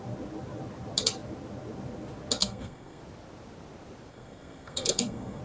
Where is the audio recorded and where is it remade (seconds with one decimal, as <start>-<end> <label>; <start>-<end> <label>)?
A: 0.0-2.4 recorded; 2.4-3.0 remade; 3.0-4.1 recorded; 4.1-5.4 remade